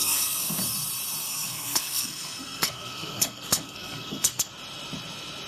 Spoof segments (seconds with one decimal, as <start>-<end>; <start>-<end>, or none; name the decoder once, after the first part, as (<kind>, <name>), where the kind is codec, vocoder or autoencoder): 0.0-0.6 (codec, SNAC); 1.2-4.5